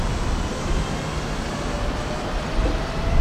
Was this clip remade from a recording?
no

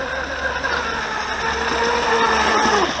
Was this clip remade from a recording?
no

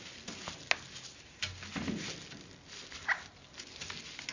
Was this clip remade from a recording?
no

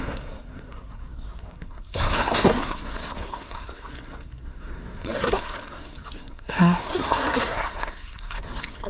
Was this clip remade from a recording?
yes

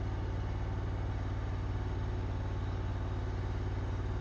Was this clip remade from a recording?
no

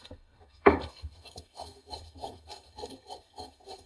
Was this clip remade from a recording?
yes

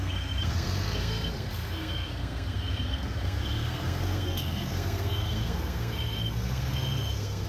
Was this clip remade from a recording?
yes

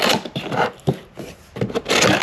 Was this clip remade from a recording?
no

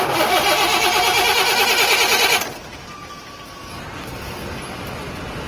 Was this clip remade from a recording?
no